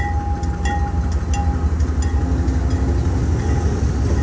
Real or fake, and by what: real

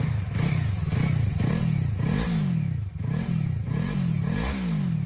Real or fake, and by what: real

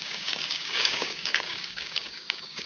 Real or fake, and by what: fake, codec, DAC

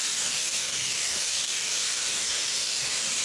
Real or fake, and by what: fake, codec, DAC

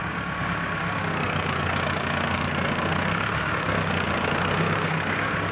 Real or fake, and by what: fake, codec, DAC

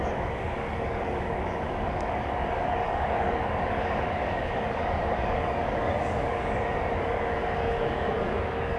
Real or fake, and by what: fake, codec, DAC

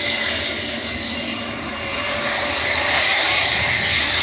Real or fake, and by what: fake, codec, DAC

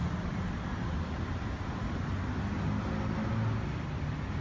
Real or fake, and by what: real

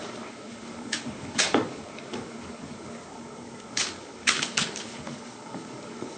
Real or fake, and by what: fake, codec, DAC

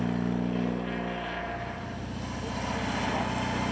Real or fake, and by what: real